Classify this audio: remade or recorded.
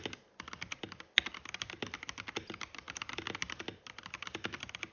recorded